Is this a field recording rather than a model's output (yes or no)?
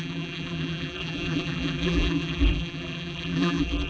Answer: no